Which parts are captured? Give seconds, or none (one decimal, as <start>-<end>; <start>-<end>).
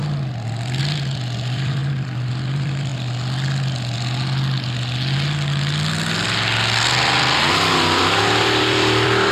0.0-0.8; 2.9-7.5